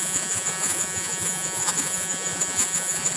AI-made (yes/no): yes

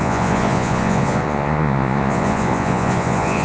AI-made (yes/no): yes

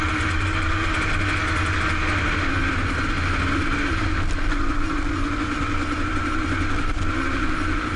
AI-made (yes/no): no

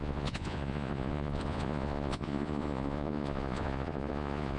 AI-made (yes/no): yes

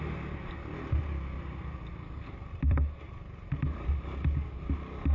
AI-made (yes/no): no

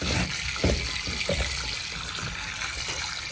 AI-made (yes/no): no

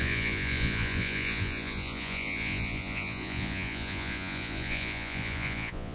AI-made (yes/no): yes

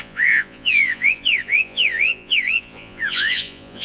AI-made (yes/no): yes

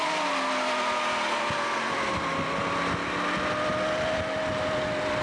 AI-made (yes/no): no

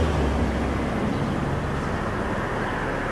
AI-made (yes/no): no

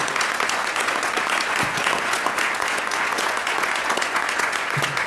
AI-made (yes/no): yes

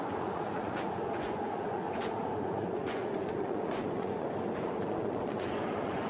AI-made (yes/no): yes